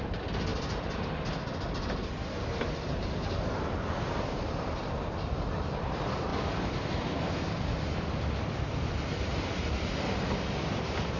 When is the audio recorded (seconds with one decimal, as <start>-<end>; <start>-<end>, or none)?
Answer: 0.0-0.5; 1.0-6.3; 7.3-11.2